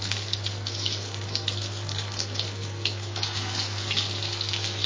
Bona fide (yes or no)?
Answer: no